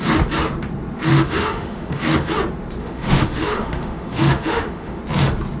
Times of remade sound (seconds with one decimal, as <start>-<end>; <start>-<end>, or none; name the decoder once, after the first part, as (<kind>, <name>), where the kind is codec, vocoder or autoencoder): 1.1-2.3 (autoencoder, DAC-VAE); 2.8-5.0